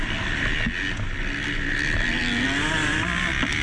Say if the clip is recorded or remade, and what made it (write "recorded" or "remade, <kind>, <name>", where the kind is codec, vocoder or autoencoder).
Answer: recorded